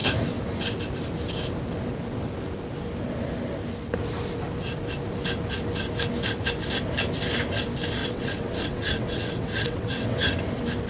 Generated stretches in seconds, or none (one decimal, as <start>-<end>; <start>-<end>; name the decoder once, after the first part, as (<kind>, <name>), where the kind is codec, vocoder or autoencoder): 8.0-10.4 (vocoder, WaveNeXt)